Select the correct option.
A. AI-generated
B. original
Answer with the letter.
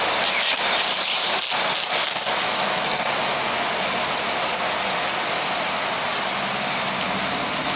B